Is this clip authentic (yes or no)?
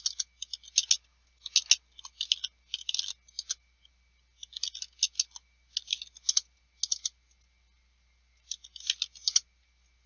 yes